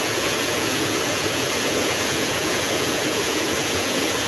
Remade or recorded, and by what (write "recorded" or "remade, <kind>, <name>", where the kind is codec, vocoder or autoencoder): remade, vocoder, Vocos